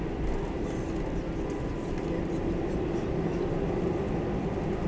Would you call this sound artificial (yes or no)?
no